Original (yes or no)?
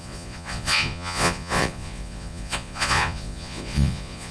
no